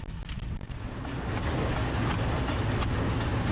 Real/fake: real